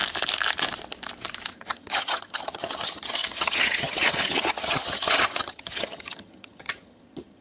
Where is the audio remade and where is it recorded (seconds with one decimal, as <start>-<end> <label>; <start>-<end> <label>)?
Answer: 0.0-1.5 recorded; 1.5-7.4 remade